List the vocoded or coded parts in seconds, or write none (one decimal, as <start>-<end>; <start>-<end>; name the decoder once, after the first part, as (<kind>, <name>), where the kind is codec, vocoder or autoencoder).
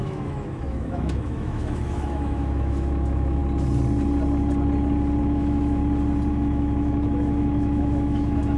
0.0-3.4 (autoencoder, DAC-VAE); 5.2-5.8; 6.3-8.6